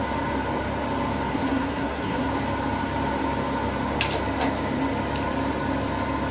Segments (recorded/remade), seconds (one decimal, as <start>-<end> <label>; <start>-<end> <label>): 0.0-1.3 recorded; 1.3-2.3 remade; 2.3-6.3 recorded